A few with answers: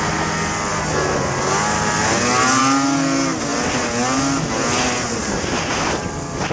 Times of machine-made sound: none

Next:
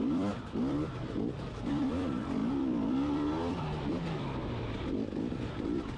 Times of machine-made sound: 0.0-6.0 (vocoder, BigVGAN v2)

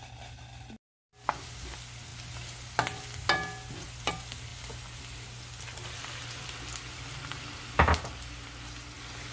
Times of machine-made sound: none